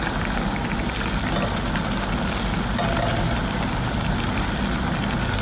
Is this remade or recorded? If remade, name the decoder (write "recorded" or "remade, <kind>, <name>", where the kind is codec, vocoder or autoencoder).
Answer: recorded